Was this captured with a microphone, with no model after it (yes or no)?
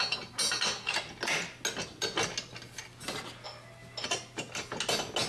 yes